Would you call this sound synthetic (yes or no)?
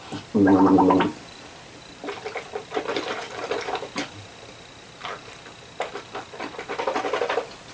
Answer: no